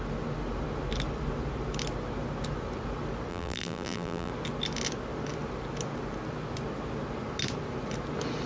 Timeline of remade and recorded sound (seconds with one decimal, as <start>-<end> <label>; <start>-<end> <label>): 0.0-3.3 recorded; 3.3-4.3 remade; 4.3-8.5 recorded

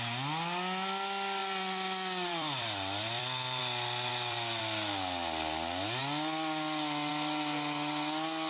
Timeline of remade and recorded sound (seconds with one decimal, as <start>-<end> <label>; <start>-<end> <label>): 0.0-1.4 recorded; 1.4-3.6 remade; 3.6-4.1 recorded; 4.1-4.6 remade; 4.6-8.5 recorded

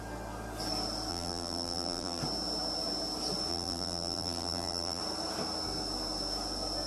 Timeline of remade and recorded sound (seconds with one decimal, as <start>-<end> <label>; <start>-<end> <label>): 0.0-1.1 recorded; 1.1-2.2 remade; 2.2-3.5 recorded; 3.5-5.0 remade; 5.0-6.9 recorded